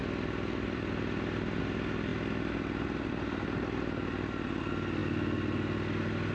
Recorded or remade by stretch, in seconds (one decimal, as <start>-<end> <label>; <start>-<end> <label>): 0.0-1.6 remade; 1.6-6.3 recorded